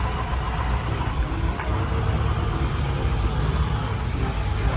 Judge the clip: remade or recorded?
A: recorded